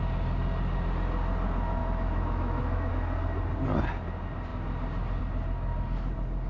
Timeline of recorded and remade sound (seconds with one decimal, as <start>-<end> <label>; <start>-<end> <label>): 0.0-1.8 recorded; 1.8-2.9 remade; 2.9-6.5 recorded